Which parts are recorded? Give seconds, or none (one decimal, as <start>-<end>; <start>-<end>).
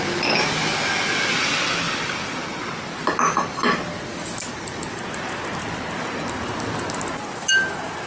0.0-8.1